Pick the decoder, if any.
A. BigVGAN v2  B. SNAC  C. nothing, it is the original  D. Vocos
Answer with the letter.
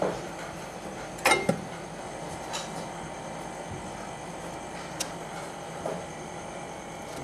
C